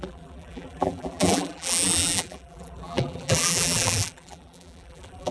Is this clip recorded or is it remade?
remade